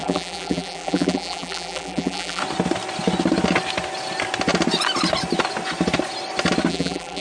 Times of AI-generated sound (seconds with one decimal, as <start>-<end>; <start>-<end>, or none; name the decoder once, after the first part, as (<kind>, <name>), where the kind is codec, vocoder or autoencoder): 0.0-2.4 (vocoder, BigVGAN v2); 6.7-7.2